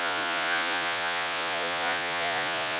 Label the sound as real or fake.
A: fake